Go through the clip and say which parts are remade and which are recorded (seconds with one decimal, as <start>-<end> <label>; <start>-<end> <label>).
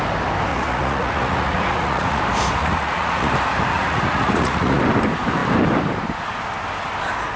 0.0-0.5 recorded; 0.5-2.2 remade; 2.2-2.6 recorded; 2.6-3.3 remade; 3.3-3.7 recorded; 3.7-4.8 remade; 4.8-7.4 recorded